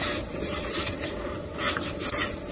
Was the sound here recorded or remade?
remade